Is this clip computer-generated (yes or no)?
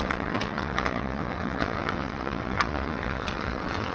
yes